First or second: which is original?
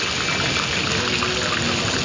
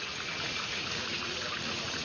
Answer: first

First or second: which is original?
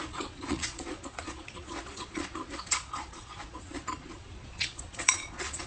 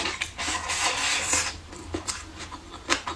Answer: second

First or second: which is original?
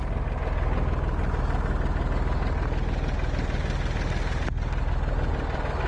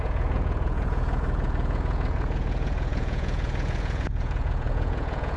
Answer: first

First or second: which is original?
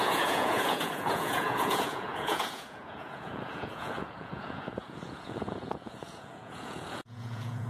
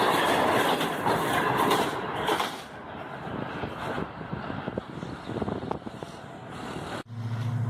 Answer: second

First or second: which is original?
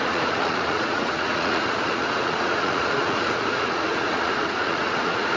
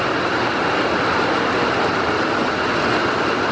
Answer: second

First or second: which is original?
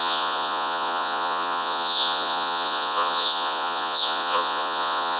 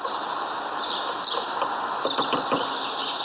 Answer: second